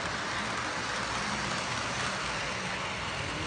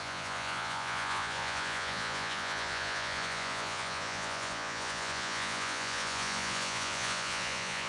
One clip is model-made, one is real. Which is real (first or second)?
first